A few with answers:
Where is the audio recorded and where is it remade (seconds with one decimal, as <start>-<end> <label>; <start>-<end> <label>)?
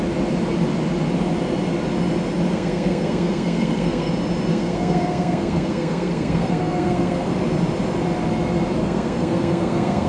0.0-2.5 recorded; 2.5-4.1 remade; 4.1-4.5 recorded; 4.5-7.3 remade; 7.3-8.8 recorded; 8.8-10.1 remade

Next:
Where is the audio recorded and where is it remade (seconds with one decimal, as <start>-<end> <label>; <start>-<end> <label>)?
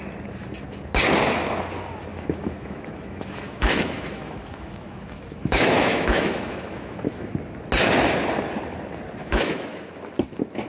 0.0-2.1 recorded; 2.1-7.3 remade; 7.3-9.2 recorded; 9.2-9.9 remade; 9.9-10.7 recorded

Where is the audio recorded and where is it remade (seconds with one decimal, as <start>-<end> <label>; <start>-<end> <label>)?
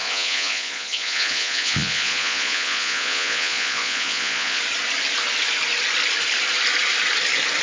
0.0-4.6 remade; 4.6-7.6 recorded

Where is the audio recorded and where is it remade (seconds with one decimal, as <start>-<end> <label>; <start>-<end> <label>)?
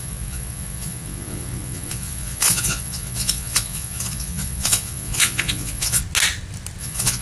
0.0-6.0 remade; 6.0-6.8 recorded; 6.8-7.2 remade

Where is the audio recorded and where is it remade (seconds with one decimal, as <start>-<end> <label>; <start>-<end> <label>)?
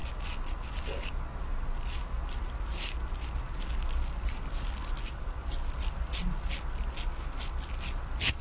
0.0-8.4 recorded